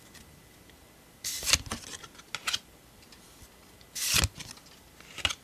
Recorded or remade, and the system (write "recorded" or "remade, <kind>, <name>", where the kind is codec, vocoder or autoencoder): recorded